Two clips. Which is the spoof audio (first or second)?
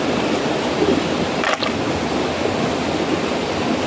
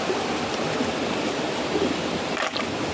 second